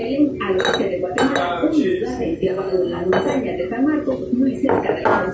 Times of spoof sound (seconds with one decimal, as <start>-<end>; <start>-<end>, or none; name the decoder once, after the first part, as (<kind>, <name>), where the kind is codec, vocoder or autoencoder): 2.1-3.1 (codec, SNAC)